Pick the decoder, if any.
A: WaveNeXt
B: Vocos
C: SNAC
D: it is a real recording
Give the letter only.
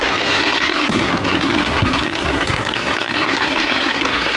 C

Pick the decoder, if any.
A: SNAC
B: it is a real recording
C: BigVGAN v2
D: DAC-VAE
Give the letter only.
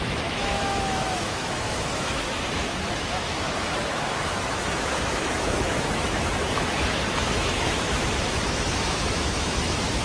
D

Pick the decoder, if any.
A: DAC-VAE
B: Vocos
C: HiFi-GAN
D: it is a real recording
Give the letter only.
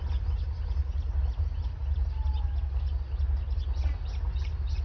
D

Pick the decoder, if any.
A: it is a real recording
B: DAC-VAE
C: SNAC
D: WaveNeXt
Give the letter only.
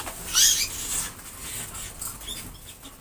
A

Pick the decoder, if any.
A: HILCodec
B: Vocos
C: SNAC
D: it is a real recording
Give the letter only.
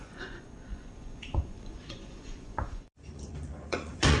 B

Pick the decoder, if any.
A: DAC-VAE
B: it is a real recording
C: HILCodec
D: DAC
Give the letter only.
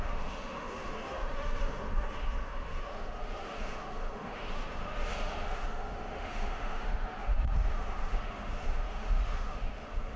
A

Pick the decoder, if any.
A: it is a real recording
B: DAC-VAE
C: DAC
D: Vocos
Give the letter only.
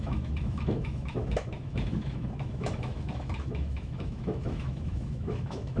B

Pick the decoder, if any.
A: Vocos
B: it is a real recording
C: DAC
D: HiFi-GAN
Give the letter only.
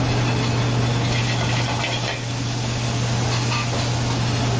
B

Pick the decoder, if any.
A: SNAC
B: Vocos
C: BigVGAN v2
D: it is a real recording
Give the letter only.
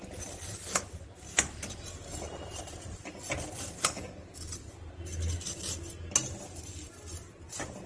D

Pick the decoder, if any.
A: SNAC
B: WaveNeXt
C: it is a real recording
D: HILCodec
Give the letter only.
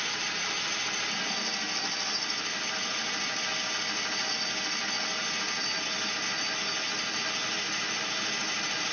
C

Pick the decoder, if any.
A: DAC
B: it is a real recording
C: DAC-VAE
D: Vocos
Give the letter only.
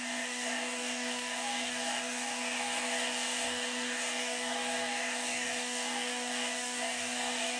A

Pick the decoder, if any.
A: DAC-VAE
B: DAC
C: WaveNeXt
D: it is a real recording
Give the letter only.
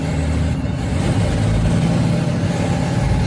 D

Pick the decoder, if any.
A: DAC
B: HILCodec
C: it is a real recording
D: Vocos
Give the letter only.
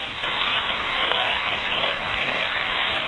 A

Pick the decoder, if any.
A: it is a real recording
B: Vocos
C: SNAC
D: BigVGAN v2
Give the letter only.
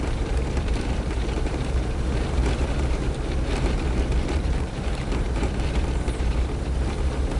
D